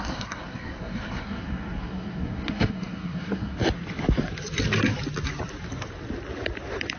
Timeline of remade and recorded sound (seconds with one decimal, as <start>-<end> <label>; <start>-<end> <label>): 0.0-3.6 remade; 3.6-7.0 recorded